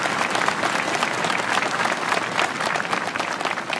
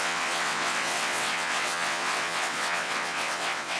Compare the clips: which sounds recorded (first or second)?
first